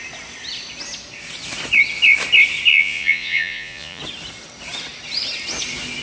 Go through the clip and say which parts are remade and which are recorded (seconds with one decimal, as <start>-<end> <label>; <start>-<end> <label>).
0.0-2.7 recorded; 2.7-4.0 remade; 4.0-6.0 recorded